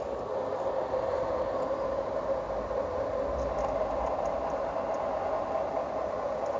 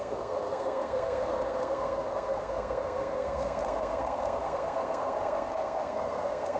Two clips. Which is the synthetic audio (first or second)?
second